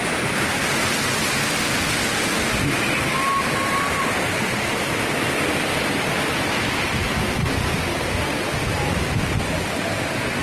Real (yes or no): yes